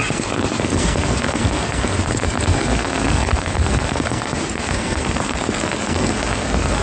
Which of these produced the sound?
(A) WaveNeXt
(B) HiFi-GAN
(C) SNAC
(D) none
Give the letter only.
C